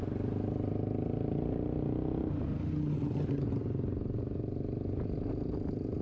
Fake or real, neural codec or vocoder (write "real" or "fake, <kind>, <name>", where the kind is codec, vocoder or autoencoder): real